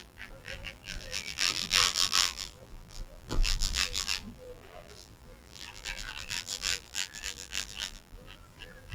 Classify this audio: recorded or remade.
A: remade